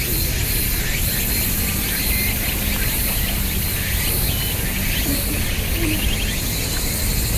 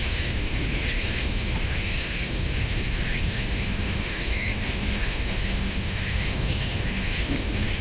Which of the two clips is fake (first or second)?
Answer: second